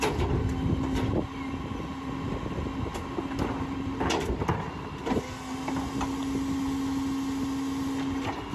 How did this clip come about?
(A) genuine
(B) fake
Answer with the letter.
A